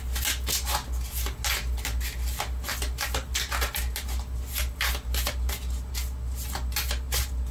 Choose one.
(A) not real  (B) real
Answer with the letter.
B